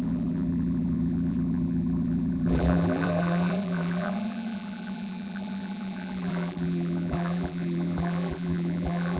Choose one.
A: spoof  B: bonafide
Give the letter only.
A